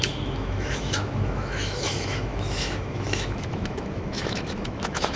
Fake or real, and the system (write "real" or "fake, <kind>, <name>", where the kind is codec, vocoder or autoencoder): fake, autoencoder, DAC-VAE